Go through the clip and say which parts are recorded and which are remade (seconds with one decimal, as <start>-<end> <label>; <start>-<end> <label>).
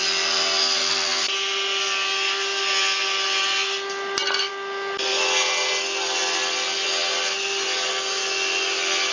0.0-9.1 recorded